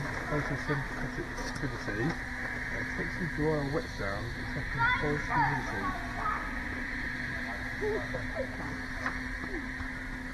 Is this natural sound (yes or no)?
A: yes